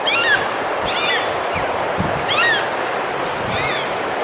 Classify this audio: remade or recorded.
recorded